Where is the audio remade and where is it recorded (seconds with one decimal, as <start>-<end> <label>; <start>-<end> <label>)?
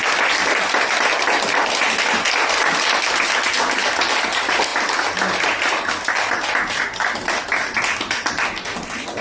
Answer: 0.0-9.2 recorded